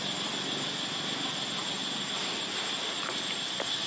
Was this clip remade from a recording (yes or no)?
no